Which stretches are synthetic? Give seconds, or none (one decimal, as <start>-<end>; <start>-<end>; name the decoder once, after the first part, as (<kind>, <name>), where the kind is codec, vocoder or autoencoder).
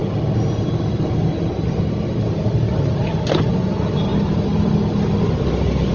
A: 4.1-4.7 (vocoder, BigVGAN v2)